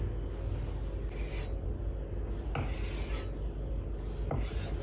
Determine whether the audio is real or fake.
real